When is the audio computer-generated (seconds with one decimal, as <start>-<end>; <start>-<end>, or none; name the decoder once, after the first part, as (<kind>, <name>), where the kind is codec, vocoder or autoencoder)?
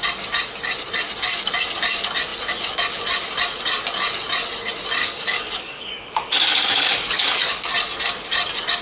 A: 5.0-7.7 (codec, DAC)